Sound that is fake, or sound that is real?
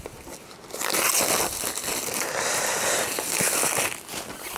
real